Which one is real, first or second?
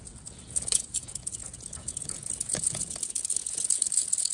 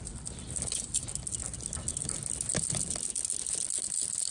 second